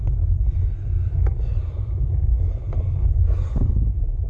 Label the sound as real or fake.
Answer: real